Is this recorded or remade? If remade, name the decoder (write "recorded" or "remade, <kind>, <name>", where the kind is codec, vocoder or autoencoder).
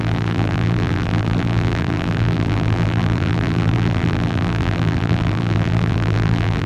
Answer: remade, vocoder, BigVGAN v2